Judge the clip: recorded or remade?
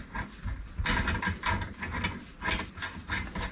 recorded